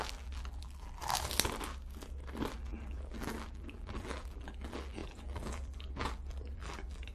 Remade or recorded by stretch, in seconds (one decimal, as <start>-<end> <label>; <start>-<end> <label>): 0.0-1.0 remade; 1.0-2.5 recorded; 2.5-7.1 remade

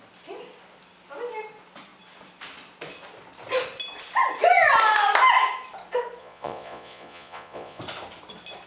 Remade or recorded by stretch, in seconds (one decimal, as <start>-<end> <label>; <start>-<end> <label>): 0.0-6.2 recorded; 6.2-7.8 remade; 7.8-8.7 recorded